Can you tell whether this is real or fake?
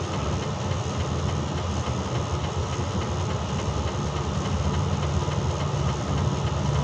real